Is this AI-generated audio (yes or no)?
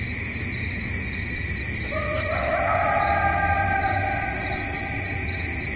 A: no